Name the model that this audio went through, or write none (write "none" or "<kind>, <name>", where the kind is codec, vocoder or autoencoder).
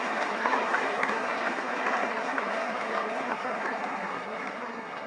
codec, SNAC